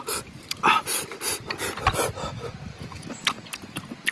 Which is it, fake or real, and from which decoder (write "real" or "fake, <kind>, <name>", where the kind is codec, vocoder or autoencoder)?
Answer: real